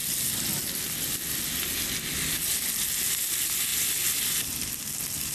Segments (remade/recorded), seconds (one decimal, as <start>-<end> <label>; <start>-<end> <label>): 0.0-5.3 recorded